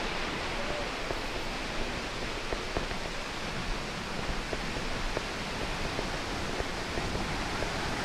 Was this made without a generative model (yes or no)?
yes